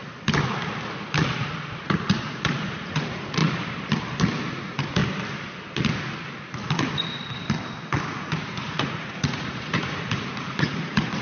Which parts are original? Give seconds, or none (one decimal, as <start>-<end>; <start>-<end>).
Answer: 0.0-1.8; 3.4-4.5; 5.0-8.1